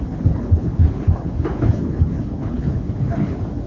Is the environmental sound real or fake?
fake